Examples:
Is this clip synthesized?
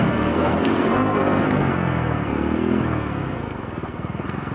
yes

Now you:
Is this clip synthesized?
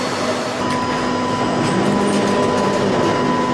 no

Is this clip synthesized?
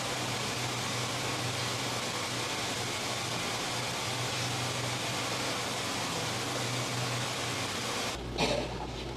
no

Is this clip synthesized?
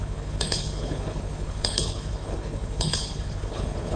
yes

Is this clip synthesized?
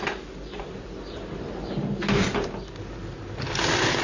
no